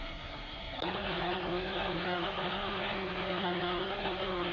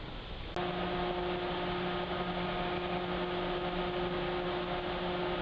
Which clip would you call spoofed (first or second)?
first